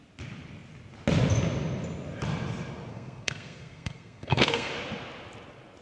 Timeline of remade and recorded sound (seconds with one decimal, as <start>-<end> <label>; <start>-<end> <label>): 0.0-2.9 recorded; 2.9-4.7 remade; 4.7-5.8 recorded